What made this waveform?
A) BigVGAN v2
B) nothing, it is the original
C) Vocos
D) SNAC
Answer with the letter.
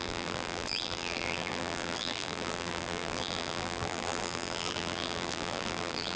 A